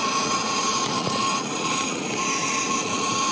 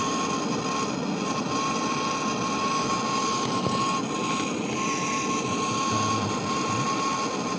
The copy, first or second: first